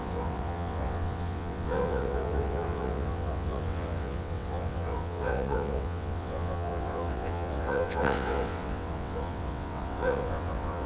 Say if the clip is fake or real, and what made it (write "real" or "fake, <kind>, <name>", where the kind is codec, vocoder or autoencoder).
fake, vocoder, WaveNeXt